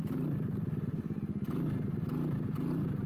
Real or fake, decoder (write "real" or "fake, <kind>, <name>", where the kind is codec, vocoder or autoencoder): real